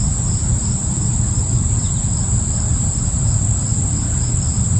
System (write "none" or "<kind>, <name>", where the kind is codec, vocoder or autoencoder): vocoder, BigVGAN v2